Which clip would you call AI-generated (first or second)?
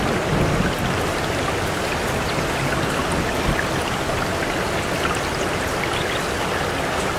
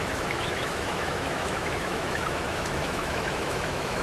second